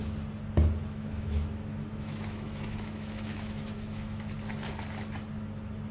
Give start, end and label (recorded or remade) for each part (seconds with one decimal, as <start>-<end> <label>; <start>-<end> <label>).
0.0-0.8 recorded; 0.8-4.3 remade; 4.3-5.9 recorded